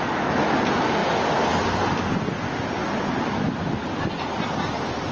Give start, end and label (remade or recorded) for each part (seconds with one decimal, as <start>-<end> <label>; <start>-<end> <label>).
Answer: 0.0-5.1 recorded